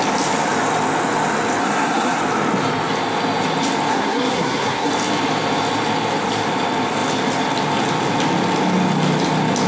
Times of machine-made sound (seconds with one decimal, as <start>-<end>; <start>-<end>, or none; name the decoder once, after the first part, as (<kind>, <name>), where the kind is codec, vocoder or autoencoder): 1.6-2.2 (codec, SNAC); 3.9-4.9